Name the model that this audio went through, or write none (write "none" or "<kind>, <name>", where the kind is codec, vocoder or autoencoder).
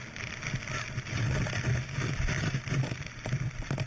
none